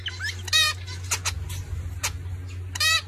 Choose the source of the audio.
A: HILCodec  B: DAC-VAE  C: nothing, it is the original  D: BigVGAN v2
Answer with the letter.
C